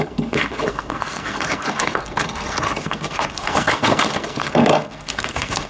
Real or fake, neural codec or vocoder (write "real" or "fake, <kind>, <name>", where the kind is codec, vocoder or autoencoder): fake, codec, SNAC